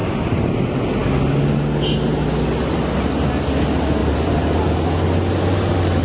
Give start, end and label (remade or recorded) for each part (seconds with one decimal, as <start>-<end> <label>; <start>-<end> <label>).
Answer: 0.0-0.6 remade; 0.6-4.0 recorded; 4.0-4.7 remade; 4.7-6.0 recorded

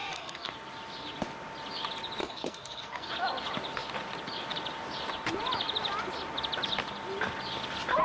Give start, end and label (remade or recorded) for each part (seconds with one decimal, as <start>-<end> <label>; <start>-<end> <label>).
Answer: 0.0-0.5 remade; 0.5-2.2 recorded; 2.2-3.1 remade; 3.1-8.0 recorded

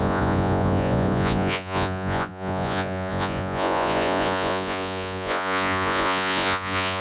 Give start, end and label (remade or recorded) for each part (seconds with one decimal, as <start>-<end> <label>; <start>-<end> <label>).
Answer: 0.0-7.0 remade

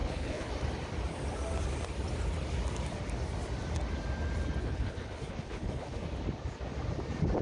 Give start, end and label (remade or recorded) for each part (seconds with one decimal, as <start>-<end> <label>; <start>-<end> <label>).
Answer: 0.0-0.5 remade; 0.5-4.6 recorded; 4.6-6.0 remade; 6.0-7.4 recorded

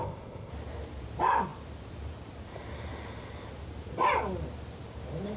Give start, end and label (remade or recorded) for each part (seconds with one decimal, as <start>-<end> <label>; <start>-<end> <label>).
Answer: 0.0-0.5 remade; 0.5-5.4 recorded

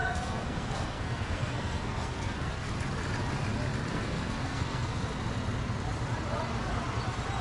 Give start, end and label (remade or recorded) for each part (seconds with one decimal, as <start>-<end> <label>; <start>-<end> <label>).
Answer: 0.0-2.5 remade; 2.5-3.9 recorded; 3.9-5.0 remade; 5.0-7.4 recorded

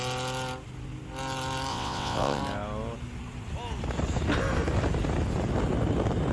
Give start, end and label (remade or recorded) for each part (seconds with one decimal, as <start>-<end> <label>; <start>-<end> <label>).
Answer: 0.0-1.7 recorded; 1.7-2.4 remade; 2.4-6.3 recorded

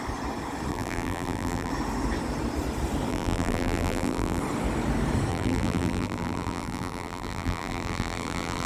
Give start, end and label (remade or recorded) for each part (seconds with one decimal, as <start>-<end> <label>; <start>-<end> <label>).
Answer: 0.0-0.7 recorded; 0.7-1.7 remade; 1.7-3.1 recorded; 3.1-4.4 remade; 4.4-5.3 recorded; 5.3-8.7 remade